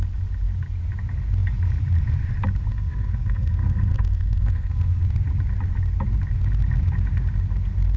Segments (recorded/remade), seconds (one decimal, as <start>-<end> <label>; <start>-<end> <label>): 0.0-2.7 recorded; 2.7-5.0 remade; 5.0-8.0 recorded